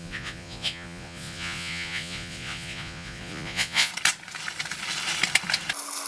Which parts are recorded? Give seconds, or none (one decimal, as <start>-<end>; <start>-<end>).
3.9-6.1